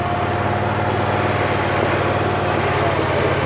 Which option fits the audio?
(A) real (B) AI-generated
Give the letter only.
A